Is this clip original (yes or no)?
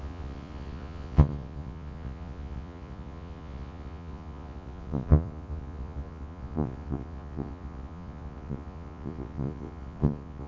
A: no